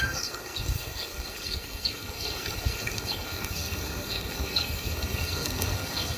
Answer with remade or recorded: remade